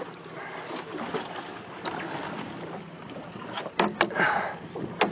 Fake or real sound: real